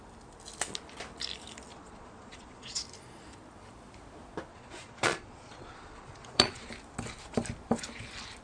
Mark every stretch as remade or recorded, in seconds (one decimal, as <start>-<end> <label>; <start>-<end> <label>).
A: 0.0-1.7 recorded; 1.7-2.8 remade; 2.8-4.5 recorded; 4.5-6.7 remade; 6.7-8.4 recorded